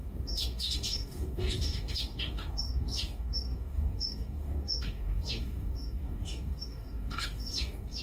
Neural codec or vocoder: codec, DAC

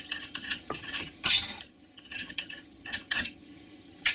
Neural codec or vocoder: vocoder, HiFi-GAN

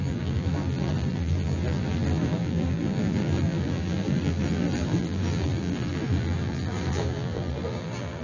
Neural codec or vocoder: vocoder, BigVGAN v2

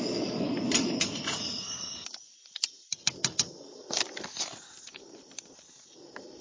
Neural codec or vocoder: none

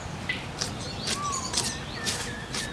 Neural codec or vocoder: none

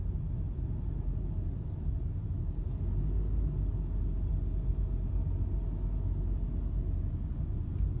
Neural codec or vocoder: none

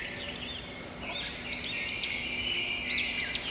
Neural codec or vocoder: none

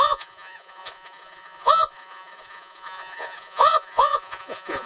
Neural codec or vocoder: vocoder, Vocos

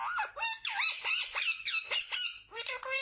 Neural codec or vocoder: none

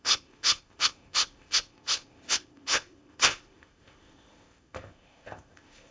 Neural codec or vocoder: codec, ZipCodec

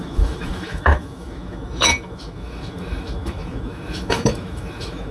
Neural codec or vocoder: autoencoder, DAC-VAE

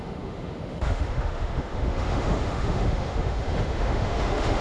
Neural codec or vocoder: autoencoder, DAC-VAE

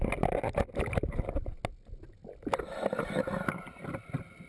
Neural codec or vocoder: none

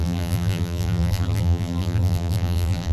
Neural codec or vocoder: vocoder, BigVGAN v2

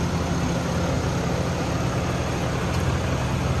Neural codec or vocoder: none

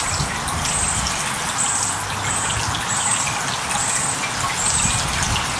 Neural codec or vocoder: none